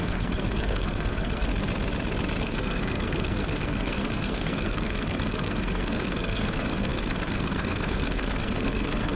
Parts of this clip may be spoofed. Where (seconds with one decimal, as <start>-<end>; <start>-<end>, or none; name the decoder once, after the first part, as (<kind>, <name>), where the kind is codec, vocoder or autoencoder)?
0.0-1.5 (codec, SNAC); 2.4-9.2